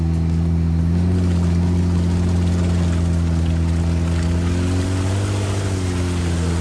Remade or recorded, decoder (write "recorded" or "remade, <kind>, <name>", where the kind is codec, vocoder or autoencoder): recorded